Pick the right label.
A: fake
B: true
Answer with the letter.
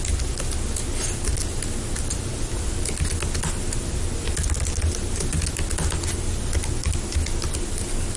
B